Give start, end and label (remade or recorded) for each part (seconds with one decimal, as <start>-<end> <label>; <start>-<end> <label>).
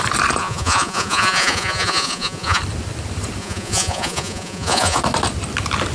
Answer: 0.0-0.4 recorded; 0.4-2.6 remade; 2.6-3.4 recorded; 3.4-5.0 remade; 5.0-5.9 recorded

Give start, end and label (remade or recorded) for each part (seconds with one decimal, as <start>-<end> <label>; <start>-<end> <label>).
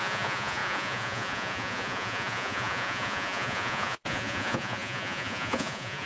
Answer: 0.0-6.1 remade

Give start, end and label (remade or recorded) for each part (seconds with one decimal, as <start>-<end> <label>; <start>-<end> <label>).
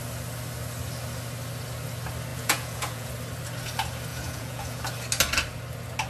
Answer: 0.0-2.3 recorded; 2.3-3.1 remade; 3.1-4.1 recorded; 4.1-4.8 remade; 4.8-6.1 recorded